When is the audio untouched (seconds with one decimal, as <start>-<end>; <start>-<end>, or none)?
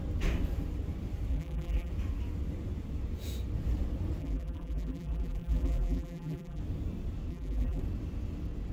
0.0-1.3; 1.9-4.2; 6.6-7.3; 7.8-8.7